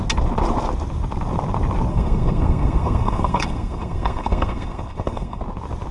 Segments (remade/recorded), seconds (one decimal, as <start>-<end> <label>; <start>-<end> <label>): 0.0-1.9 recorded; 1.9-5.4 remade; 5.4-5.9 recorded